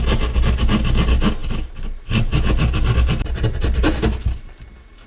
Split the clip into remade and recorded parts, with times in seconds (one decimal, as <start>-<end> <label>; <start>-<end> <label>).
0.0-5.1 recorded